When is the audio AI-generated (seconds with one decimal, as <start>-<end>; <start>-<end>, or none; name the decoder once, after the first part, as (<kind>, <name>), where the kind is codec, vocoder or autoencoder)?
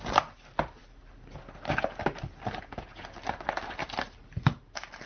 none